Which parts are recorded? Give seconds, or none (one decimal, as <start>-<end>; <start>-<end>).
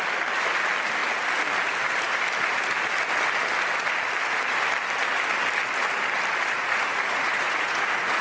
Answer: 0.0-6.6